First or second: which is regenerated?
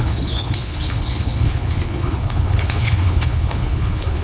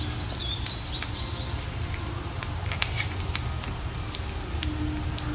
first